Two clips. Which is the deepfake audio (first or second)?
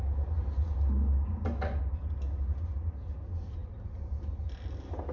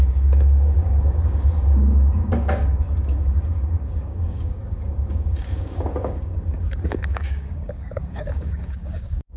second